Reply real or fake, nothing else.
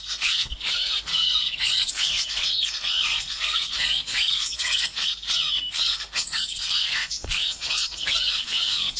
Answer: fake